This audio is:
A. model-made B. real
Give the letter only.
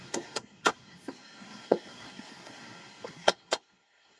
A